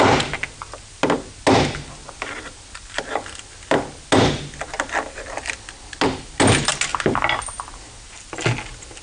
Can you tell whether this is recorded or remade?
recorded